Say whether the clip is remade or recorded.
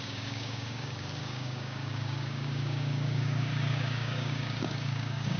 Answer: remade